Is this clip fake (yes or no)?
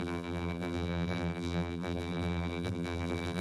yes